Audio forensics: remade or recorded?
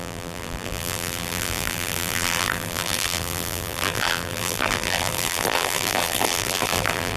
remade